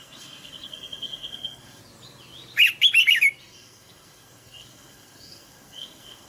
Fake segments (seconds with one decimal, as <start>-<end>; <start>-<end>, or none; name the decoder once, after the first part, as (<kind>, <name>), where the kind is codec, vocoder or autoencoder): 0.0-1.8 (codec, SNAC); 3.4-6.3

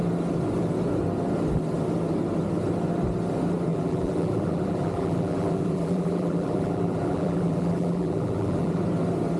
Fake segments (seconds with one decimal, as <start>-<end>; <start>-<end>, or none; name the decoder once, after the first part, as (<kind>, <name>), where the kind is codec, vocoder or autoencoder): 3.7-8.8 (vocoder, BigVGAN v2)

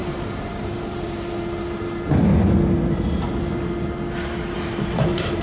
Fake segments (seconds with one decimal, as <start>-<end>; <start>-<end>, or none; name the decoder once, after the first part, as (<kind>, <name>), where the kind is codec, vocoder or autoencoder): 0.0-2.3 (vocoder, BigVGAN v2); 4.5-5.4

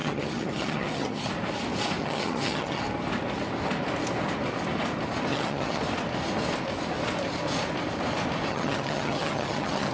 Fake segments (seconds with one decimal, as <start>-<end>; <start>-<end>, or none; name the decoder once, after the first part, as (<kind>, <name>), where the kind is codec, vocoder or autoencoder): 0.0-1.3 (vocoder, HiFi-GAN); 2.0-2.8; 5.3-5.8; 8.5-9.9

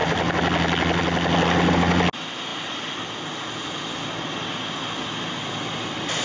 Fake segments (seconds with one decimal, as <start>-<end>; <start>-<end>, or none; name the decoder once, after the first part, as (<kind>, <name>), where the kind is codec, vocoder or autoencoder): none

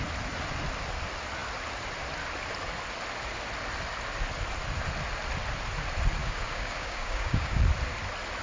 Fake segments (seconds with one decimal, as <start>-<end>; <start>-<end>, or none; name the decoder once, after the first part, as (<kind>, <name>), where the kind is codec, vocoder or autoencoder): 6.2-7.6 (codec, DAC)

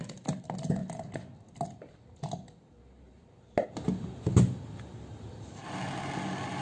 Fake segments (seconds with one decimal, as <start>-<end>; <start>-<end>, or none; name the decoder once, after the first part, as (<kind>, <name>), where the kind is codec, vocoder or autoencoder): none